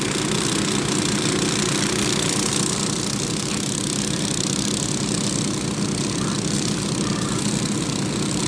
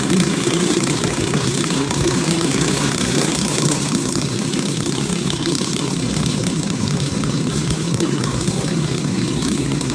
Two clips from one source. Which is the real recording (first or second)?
first